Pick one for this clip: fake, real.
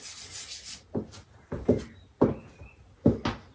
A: real